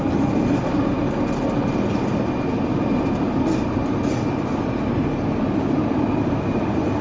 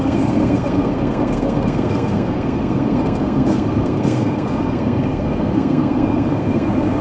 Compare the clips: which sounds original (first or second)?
first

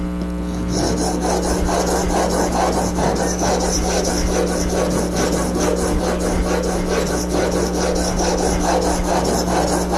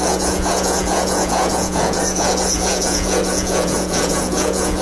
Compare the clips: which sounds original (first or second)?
first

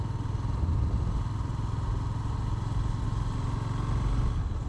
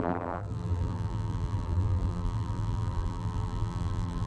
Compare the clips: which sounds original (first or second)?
first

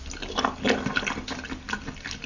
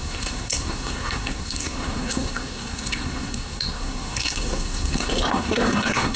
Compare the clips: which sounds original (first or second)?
first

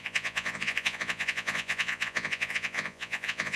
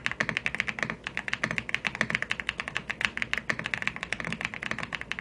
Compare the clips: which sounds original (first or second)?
second